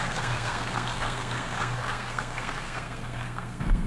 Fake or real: fake